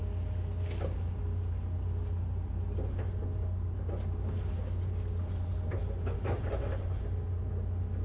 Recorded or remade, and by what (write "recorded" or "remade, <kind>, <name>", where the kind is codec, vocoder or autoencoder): recorded